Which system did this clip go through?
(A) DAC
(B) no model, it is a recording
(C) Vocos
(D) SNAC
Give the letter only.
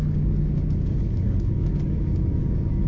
A